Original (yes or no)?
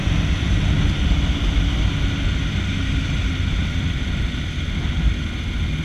yes